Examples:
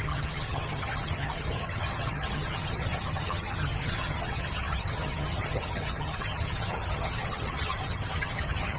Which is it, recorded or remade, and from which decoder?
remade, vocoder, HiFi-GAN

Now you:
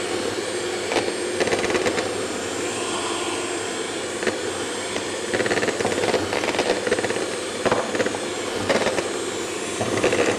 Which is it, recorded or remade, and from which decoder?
recorded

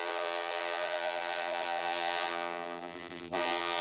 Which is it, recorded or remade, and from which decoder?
remade, vocoder, BigVGAN v2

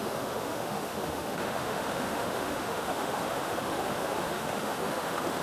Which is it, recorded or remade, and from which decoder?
remade, autoencoder, DAC-VAE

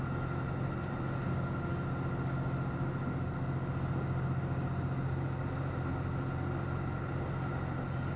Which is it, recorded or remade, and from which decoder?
recorded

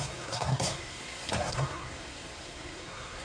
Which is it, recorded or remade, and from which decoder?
remade, codec, SNAC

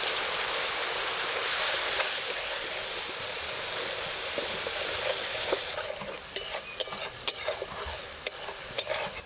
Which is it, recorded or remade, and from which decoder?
recorded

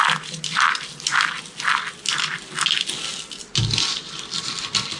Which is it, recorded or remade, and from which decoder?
recorded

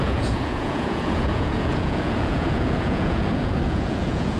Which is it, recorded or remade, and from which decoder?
remade, vocoder, Vocos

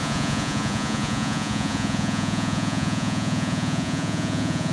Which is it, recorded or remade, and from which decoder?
remade, vocoder, Vocos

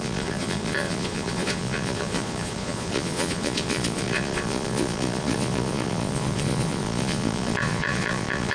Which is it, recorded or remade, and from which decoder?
remade, vocoder, Vocos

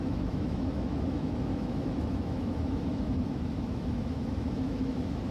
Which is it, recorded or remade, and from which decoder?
remade, autoencoder, DAC-VAE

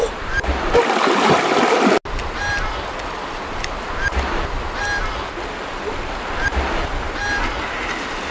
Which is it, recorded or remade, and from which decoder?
recorded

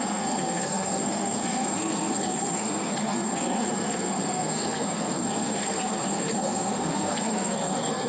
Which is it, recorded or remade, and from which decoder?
remade, codec, SNAC